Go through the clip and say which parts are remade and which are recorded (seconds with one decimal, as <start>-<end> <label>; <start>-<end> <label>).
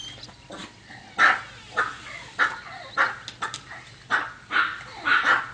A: 0.0-5.5 recorded